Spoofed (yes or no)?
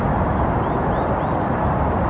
no